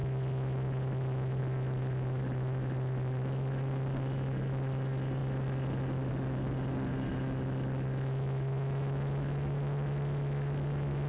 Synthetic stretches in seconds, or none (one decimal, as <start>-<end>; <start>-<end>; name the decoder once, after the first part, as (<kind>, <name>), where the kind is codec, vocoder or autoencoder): none